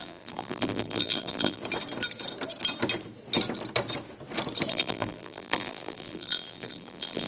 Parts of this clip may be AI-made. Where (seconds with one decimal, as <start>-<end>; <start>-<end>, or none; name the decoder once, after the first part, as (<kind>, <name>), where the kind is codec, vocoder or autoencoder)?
0.0-1.6 (vocoder, BigVGAN v2); 4.7-7.3